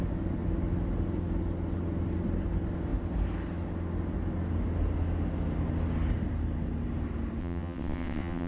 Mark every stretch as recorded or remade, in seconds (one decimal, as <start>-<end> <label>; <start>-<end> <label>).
0.0-7.4 recorded; 7.4-8.5 remade